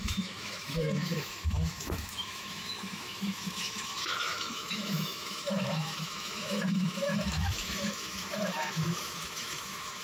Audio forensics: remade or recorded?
remade